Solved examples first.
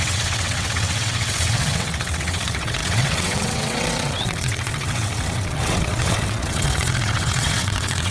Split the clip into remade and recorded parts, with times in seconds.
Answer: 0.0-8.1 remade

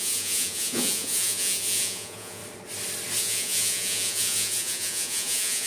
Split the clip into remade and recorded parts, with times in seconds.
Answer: 0.0-2.4 remade; 2.4-3.2 recorded; 3.2-5.7 remade